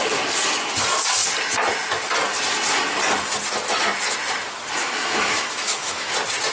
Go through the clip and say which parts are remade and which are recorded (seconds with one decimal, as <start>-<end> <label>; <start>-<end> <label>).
0.0-4.8 recorded; 4.8-6.1 remade; 6.1-6.5 recorded

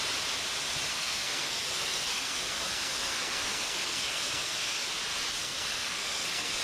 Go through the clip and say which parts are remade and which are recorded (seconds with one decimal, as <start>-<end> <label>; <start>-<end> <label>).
0.0-0.9 recorded; 0.9-4.9 remade; 4.9-5.4 recorded; 5.4-6.6 remade

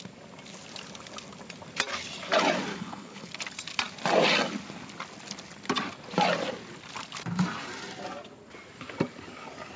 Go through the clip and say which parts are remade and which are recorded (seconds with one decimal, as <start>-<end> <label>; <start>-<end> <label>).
0.0-2.7 recorded; 2.7-3.3 remade; 3.3-9.8 recorded

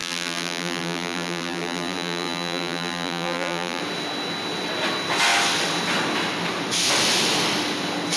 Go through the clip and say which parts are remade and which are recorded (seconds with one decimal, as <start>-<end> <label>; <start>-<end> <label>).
0.0-3.8 remade; 3.8-8.2 recorded

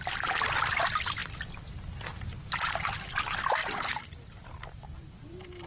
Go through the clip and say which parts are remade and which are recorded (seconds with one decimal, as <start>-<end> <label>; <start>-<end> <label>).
0.0-3.6 recorded; 3.6-5.7 remade

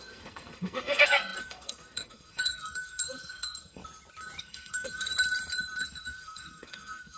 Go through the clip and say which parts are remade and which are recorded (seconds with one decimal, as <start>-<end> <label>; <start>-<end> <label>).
0.0-3.8 remade; 3.8-4.4 recorded; 4.4-5.1 remade; 5.1-5.8 recorded; 5.8-7.2 remade

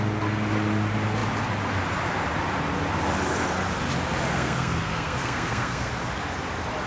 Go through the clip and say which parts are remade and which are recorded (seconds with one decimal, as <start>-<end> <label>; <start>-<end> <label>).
0.0-4.3 recorded; 4.3-5.9 remade; 5.9-6.9 recorded